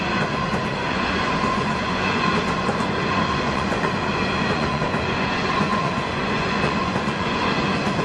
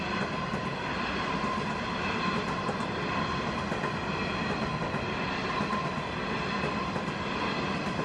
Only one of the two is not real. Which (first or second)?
first